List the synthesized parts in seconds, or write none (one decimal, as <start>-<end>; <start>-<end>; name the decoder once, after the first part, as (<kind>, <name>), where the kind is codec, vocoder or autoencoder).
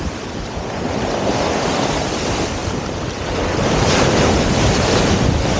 0.0-5.6 (vocoder, BigVGAN v2)